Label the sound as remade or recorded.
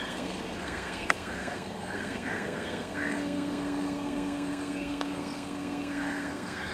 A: remade